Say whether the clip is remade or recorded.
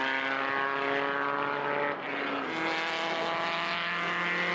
recorded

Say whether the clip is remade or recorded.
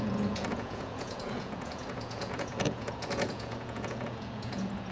remade